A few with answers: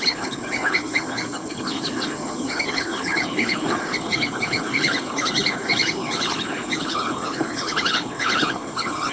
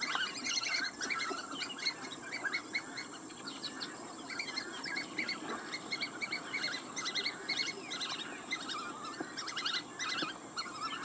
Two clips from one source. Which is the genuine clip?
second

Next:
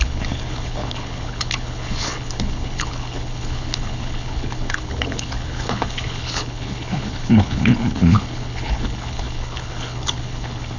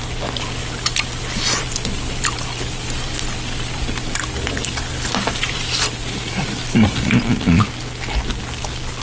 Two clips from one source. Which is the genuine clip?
second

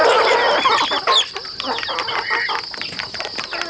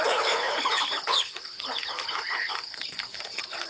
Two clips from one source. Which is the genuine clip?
first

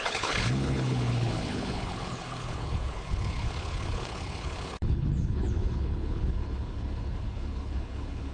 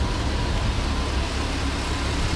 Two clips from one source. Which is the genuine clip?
second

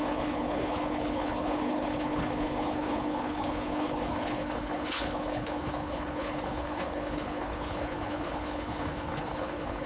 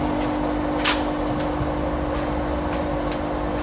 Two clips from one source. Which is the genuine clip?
second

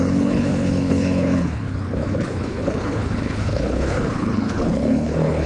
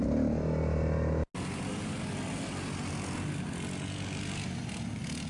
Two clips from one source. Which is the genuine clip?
second